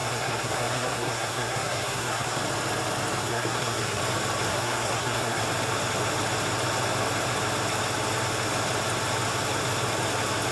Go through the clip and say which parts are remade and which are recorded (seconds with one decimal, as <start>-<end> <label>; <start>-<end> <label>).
0.0-2.4 remade; 2.4-3.2 recorded; 3.2-4.0 remade; 4.0-4.5 recorded; 4.5-5.4 remade; 5.4-10.5 recorded